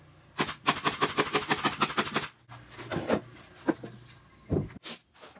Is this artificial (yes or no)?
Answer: no